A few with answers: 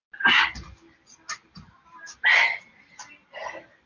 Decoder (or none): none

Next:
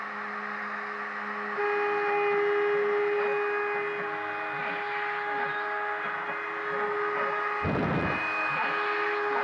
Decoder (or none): none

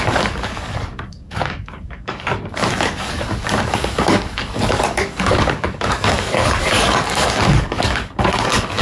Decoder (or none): codec, DAC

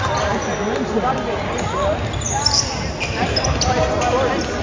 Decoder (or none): none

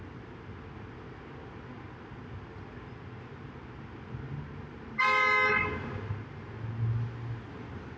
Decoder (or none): none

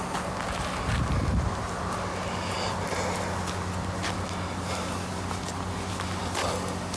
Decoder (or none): none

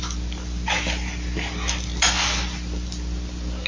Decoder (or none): none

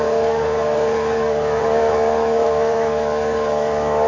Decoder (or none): codec, DAC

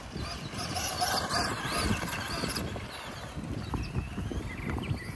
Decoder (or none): none